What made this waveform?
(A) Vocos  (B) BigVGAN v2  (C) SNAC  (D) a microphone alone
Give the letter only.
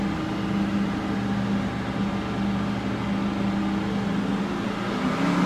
D